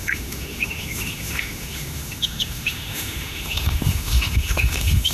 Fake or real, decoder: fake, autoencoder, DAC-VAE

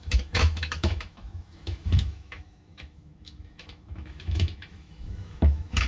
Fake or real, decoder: fake, autoencoder, DAC-VAE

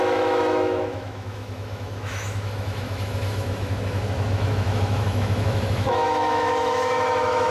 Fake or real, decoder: fake, autoencoder, DAC-VAE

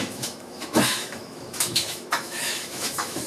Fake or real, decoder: fake, autoencoder, DAC-VAE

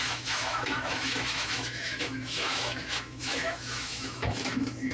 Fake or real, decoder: fake, autoencoder, DAC-VAE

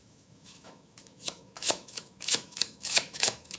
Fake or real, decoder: fake, autoencoder, DAC-VAE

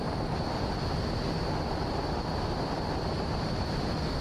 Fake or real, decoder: real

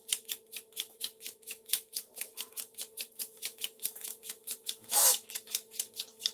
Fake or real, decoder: fake, autoencoder, DAC-VAE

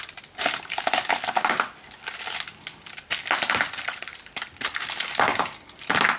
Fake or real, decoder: real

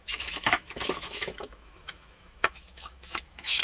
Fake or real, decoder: fake, autoencoder, DAC-VAE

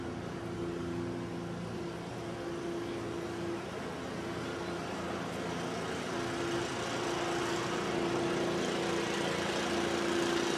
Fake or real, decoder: real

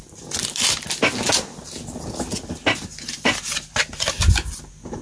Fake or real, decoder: real